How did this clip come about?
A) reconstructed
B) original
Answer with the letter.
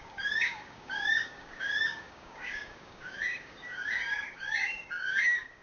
A